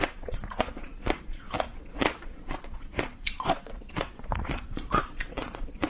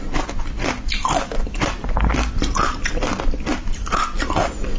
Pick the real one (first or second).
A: second